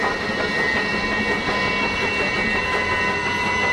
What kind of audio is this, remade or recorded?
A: recorded